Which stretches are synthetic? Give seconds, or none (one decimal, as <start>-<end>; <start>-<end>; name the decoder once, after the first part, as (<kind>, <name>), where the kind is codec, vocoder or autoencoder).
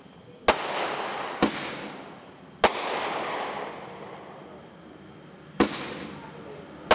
none